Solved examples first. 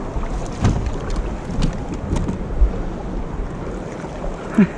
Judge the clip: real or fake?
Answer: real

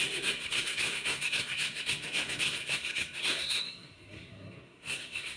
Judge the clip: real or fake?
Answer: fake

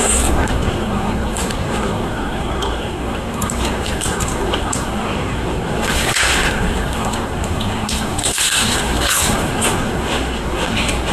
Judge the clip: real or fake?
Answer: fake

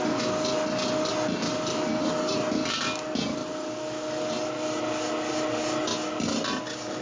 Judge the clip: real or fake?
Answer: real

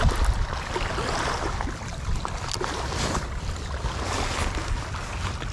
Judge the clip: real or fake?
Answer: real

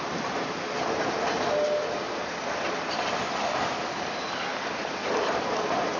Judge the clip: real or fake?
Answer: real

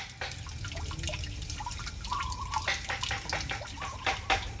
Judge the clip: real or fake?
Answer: real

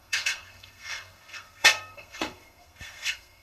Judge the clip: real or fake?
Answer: fake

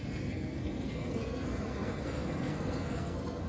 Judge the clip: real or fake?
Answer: fake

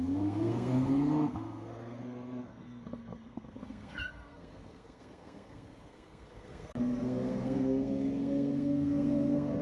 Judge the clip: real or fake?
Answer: fake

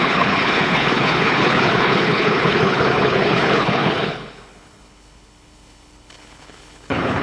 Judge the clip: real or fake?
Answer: fake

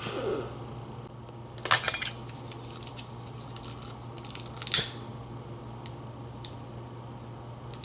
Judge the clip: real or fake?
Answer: real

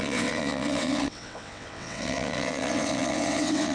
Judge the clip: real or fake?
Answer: fake